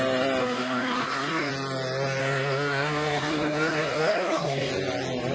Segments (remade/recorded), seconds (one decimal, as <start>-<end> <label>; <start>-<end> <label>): 0.0-0.4 recorded; 0.4-1.5 remade; 1.5-2.2 recorded; 2.2-4.7 remade; 4.7-5.3 recorded